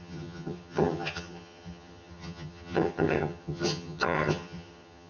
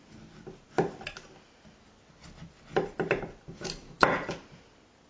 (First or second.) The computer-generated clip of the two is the first